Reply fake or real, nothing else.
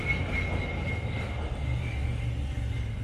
real